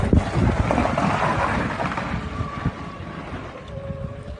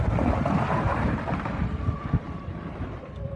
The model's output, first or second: second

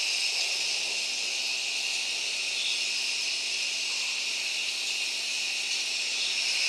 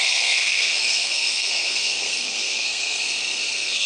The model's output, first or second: second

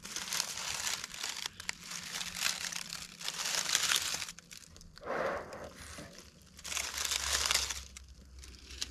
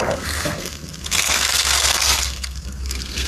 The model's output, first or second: second